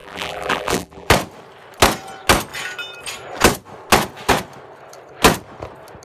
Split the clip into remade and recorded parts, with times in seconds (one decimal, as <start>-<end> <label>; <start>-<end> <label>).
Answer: 0.0-1.1 remade; 1.1-6.0 recorded